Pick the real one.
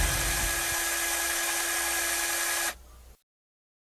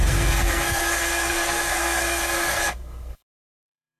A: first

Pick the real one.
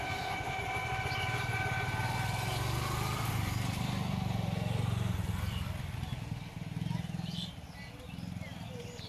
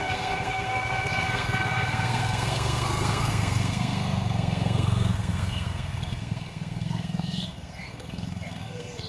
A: first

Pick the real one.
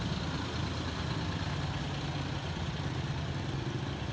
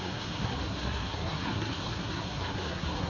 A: first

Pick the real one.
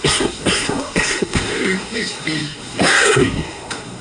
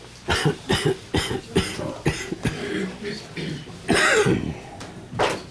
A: second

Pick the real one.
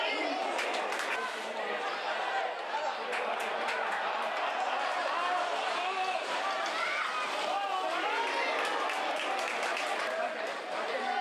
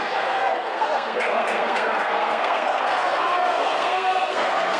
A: first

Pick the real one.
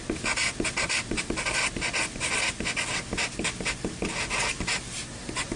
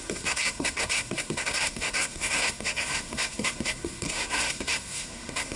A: first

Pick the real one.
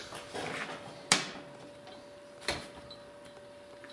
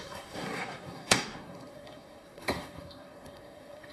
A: first